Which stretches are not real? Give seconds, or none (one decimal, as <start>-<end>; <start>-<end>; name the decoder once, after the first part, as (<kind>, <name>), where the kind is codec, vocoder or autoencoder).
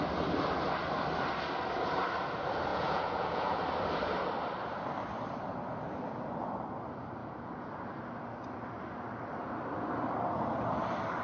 2.7-3.6 (vocoder, Vocos); 7.2-7.7